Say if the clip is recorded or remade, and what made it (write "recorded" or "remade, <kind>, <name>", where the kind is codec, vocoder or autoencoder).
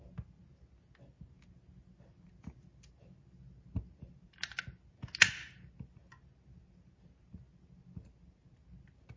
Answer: recorded